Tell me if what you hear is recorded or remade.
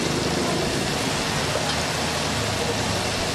recorded